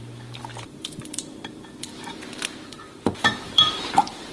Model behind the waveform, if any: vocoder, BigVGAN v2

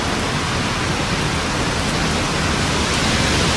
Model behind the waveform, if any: none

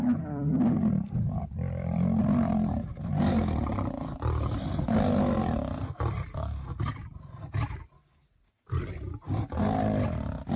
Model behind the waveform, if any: none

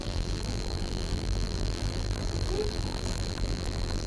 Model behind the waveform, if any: vocoder, BigVGAN v2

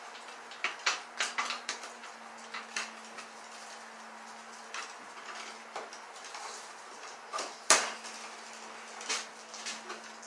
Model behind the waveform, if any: none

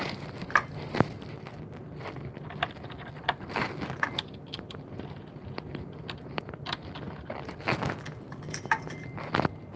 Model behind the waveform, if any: none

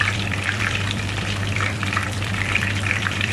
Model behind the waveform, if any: vocoder, BigVGAN v2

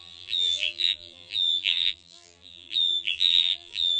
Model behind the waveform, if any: vocoder, BigVGAN v2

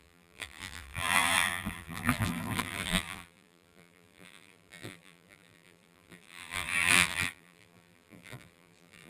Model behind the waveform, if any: vocoder, BigVGAN v2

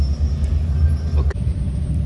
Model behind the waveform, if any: none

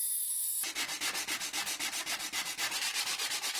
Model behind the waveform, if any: vocoder, BigVGAN v2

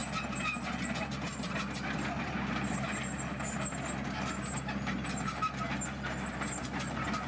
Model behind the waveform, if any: none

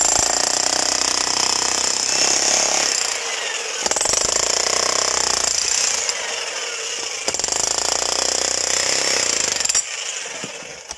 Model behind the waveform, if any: none